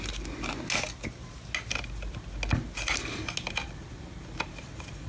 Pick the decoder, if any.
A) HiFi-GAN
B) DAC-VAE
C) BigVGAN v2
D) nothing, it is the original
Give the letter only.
D